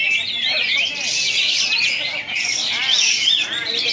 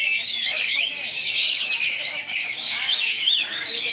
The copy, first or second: second